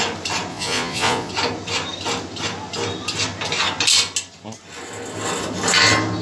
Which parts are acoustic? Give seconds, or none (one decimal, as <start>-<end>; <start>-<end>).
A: 0.0-0.5; 1.3-6.2